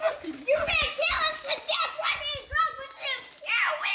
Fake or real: real